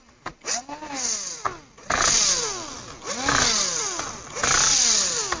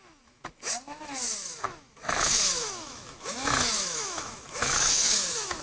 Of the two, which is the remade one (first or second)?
second